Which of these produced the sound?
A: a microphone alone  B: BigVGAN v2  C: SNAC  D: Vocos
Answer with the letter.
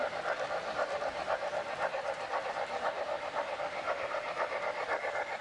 B